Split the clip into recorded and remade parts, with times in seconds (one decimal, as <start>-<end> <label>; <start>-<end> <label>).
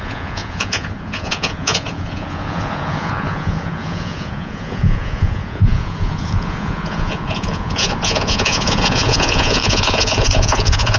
0.0-11.0 remade